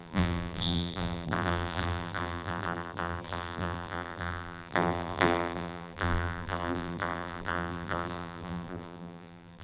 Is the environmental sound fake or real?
fake